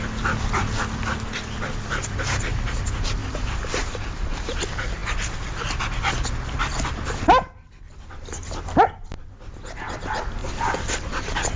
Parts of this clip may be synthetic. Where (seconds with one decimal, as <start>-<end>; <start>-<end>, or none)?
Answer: 3.2-4.6; 10.4-11.1